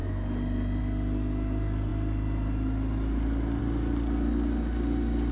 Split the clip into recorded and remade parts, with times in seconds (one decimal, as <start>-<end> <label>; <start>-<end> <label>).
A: 0.0-5.3 recorded